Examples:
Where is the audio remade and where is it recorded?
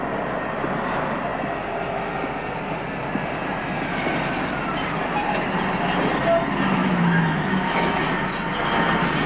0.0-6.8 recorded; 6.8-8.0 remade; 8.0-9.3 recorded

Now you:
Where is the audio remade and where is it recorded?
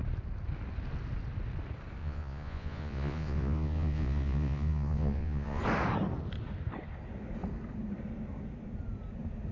0.0-2.0 recorded; 2.0-5.6 remade; 5.6-9.5 recorded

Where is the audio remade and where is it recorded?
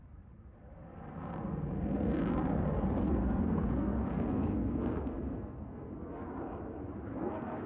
0.0-3.2 recorded; 3.2-6.3 remade; 6.3-7.2 recorded; 7.2-7.7 remade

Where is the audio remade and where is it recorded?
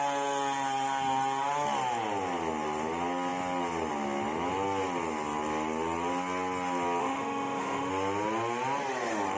0.0-7.0 recorded; 7.0-7.9 remade; 7.9-9.4 recorded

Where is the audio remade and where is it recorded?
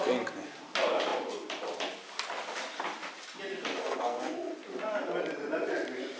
0.0-3.8 recorded; 3.8-4.5 remade; 4.5-6.2 recorded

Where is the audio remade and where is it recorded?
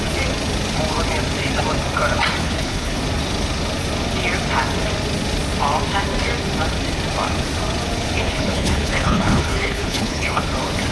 0.0-2.4 recorded; 2.4-3.0 remade; 3.0-8.2 recorded; 8.2-10.4 remade; 10.4-10.9 recorded